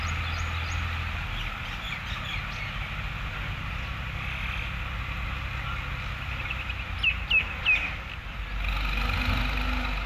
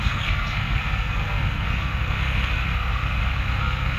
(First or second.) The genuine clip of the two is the first